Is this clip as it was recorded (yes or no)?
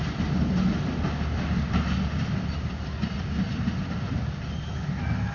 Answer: yes